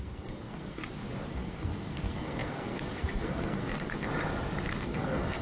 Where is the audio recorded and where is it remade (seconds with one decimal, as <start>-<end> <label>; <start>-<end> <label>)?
0.0-0.8 remade; 0.8-1.3 recorded; 1.3-4.1 remade; 4.1-4.8 recorded; 4.8-5.4 remade